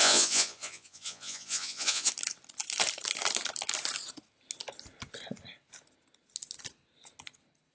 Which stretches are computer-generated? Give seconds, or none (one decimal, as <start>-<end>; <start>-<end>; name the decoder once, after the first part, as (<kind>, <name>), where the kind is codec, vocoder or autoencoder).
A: 0.0-2.1 (vocoder, Vocos)